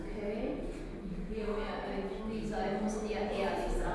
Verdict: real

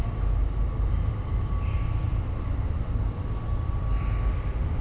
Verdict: real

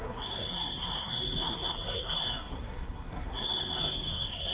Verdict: fake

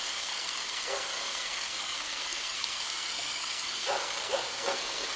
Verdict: fake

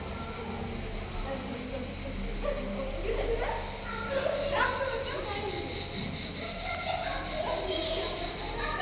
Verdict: real